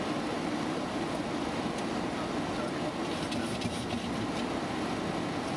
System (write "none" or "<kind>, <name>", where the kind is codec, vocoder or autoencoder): none